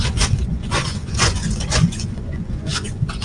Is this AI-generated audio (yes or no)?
yes